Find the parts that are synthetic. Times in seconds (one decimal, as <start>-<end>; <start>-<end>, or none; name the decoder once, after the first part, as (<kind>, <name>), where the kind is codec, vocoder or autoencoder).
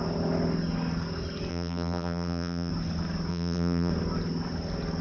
1.5-2.7 (vocoder, BigVGAN v2); 3.3-3.9